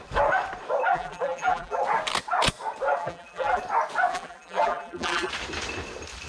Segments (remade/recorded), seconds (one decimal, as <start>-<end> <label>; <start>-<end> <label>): 0.0-0.9 recorded; 0.9-1.8 remade; 1.8-3.0 recorded; 3.0-3.6 remade; 3.6-4.1 recorded; 4.1-5.3 remade; 5.3-6.3 recorded